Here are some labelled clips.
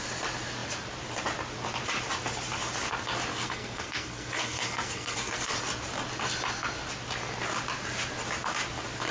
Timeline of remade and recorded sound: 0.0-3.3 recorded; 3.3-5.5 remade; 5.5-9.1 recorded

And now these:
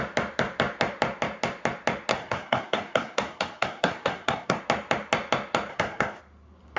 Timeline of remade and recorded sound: 0.0-2.1 recorded; 2.1-4.6 remade; 4.6-5.7 recorded; 5.7-6.2 remade; 6.2-6.8 recorded

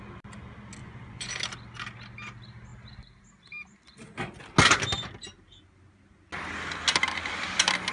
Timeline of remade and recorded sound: 0.0-0.8 recorded; 0.8-1.3 remade; 1.3-7.9 recorded

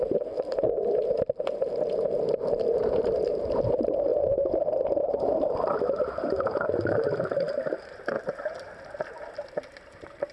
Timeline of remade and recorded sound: 0.0-4.1 remade; 4.1-4.7 recorded; 4.7-10.3 remade